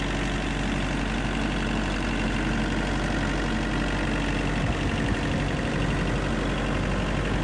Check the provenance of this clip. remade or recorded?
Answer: recorded